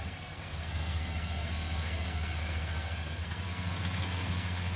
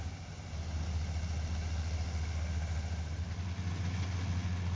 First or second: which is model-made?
first